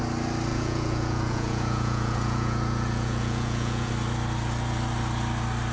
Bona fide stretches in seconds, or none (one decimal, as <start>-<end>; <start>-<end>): 0.0-0.5; 3.9-5.7

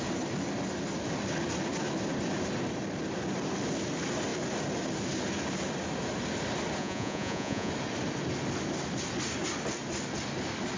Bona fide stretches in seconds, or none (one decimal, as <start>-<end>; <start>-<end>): 0.0-6.8; 7.7-10.8

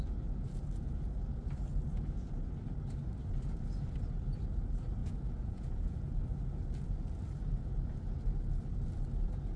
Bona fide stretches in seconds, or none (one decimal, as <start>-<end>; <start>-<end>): 0.0-5.0; 6.1-9.6

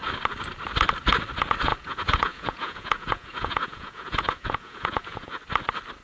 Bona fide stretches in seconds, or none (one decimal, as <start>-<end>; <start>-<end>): 0.0-1.7; 5.3-6.0

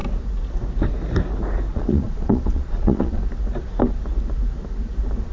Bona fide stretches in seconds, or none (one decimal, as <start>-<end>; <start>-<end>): 0.0-1.7; 3.2-5.3